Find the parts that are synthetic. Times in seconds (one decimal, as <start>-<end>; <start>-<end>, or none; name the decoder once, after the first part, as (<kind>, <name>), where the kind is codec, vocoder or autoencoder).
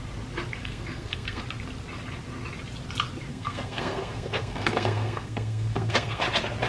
0.6-1.4 (codec, SNAC); 3.3-6.2